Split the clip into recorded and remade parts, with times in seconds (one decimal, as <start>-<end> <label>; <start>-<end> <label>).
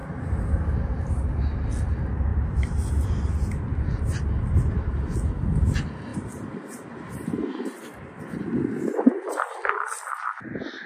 0.0-2.3 recorded; 2.3-2.9 remade; 2.9-6.1 recorded; 6.1-8.2 remade; 8.2-10.9 recorded